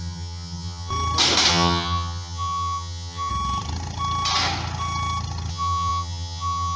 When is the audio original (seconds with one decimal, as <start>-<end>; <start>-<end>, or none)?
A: 0.9-1.5; 3.3-5.5